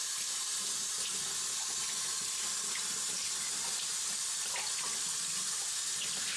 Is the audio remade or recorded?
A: recorded